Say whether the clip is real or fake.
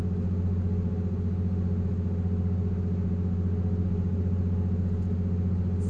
real